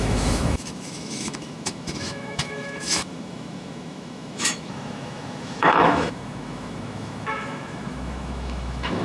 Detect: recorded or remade remade